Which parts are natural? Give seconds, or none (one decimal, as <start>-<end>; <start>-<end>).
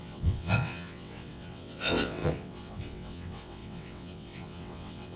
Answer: none